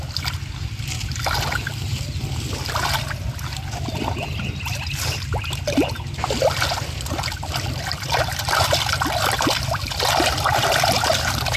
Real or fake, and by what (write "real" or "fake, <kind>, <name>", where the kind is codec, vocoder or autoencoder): real